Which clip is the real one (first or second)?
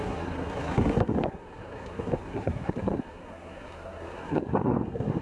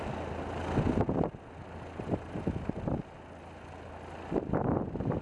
second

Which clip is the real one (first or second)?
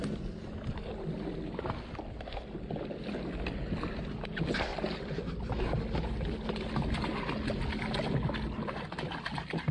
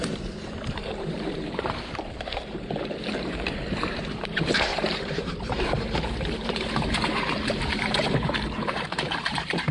first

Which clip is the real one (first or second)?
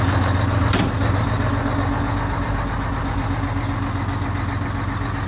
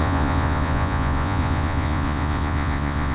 first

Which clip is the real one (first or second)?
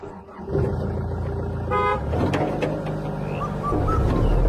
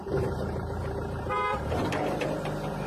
first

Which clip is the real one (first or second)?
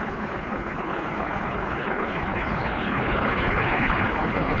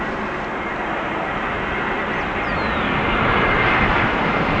second